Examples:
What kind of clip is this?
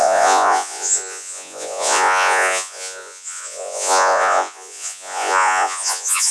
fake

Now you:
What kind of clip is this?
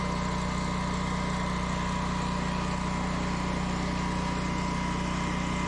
real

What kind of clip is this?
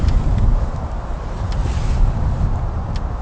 real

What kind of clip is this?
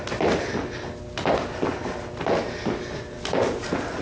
real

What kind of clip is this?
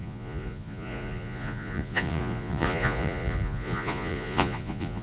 fake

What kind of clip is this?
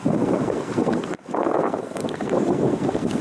fake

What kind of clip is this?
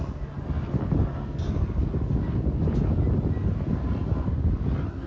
real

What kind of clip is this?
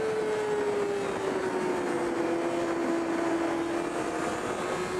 real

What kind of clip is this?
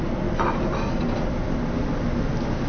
real